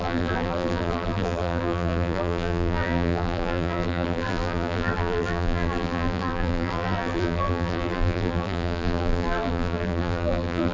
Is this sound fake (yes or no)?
yes